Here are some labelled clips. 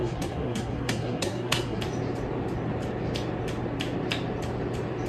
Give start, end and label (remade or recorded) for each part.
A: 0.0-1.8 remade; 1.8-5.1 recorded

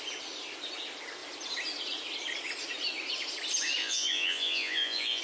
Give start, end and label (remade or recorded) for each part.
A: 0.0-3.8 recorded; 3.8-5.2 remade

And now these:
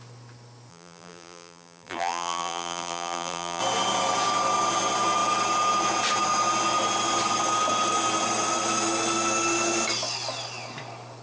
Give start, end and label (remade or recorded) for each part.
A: 0.0-0.7 recorded; 0.7-3.6 remade; 3.6-11.2 recorded